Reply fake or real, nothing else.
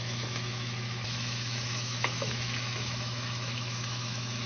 fake